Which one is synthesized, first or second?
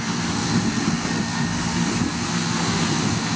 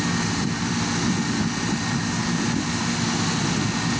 first